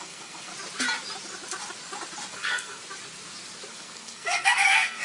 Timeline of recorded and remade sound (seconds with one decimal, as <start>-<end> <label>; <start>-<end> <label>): 0.0-0.5 remade; 0.5-2.3 recorded; 2.3-2.8 remade; 2.8-3.7 recorded; 3.7-5.0 remade